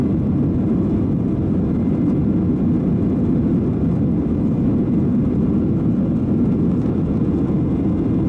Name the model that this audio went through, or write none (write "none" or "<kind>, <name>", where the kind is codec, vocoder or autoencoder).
none